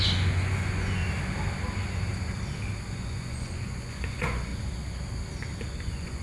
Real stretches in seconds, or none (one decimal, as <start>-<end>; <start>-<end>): 1.0-2.9; 4.5-5.8